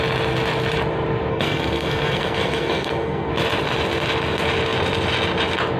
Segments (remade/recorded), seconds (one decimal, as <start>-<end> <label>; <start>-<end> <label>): 0.0-1.3 recorded; 1.3-3.3 remade; 3.3-5.8 recorded